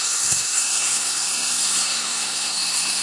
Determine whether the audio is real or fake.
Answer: fake